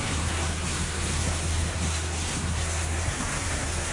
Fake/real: fake